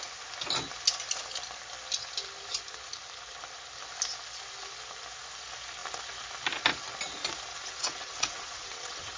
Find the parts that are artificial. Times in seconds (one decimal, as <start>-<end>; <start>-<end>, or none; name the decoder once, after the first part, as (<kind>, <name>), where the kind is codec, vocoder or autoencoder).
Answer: 7.5-9.2 (vocoder, WaveNeXt)